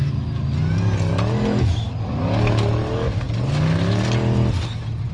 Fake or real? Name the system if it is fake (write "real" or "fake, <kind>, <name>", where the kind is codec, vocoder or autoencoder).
real